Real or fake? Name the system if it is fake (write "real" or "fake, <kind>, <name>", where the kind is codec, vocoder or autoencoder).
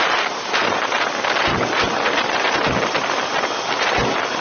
real